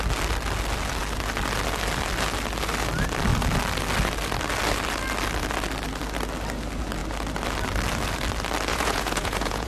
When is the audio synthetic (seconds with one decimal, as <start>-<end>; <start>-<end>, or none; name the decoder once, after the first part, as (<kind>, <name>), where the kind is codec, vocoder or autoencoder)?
8.7-9.7 (vocoder, Vocos)